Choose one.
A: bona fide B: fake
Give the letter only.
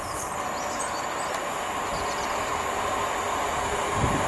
A